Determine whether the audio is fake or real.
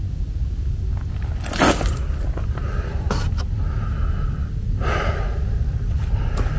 real